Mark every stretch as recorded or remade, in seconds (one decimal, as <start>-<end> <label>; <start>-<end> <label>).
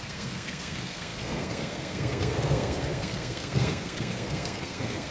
0.0-5.1 remade